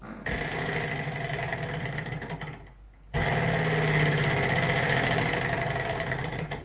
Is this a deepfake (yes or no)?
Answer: no